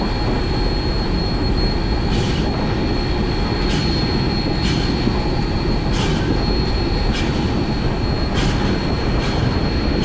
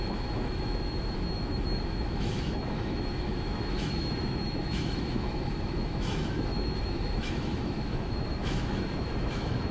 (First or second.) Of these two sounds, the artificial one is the second